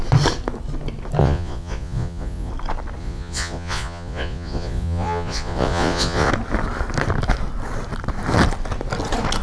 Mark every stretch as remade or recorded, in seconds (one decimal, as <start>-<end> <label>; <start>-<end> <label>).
0.0-1.2 recorded; 1.2-2.5 remade; 2.5-3.0 recorded; 3.0-6.3 remade; 6.3-9.4 recorded